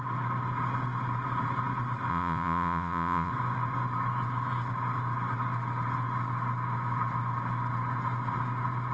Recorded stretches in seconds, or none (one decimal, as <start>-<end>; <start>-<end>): 0.0-2.1; 3.3-8.9